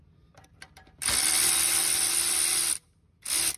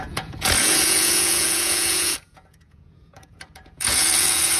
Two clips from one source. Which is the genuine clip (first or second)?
first